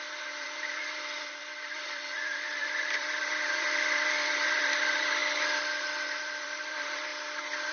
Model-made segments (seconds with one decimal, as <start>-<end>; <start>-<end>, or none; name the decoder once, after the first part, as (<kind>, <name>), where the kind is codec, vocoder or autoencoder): 0.0-5.2 (vocoder, BigVGAN v2); 6.2-7.1

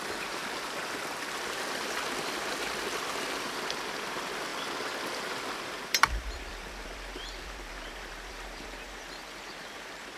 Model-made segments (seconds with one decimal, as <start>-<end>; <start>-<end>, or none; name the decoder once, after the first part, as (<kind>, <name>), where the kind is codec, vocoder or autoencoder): 0.0-0.4 (vocoder, BigVGAN v2); 1.0-4.5; 5.7-10.2

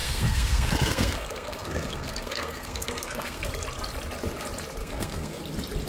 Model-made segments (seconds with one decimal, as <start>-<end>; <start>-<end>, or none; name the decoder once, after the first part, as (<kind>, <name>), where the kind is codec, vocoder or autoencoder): 0.0-3.5 (codec, SNAC); 4.8-5.4

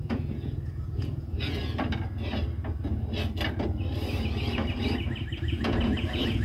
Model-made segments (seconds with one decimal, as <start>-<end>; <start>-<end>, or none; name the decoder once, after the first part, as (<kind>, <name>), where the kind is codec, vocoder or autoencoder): 0.0-1.6 (vocoder, Vocos); 5.4-6.4

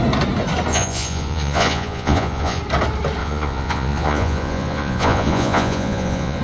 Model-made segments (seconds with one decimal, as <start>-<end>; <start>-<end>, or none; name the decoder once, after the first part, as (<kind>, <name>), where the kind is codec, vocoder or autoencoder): 0.7-2.6 (vocoder, Vocos); 3.2-6.4